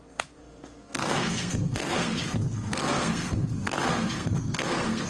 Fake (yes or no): yes